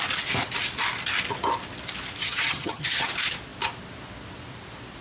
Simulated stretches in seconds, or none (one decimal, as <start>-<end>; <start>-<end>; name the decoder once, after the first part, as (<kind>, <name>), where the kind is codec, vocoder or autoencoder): 2.2-3.1 (vocoder, HiFi-GAN)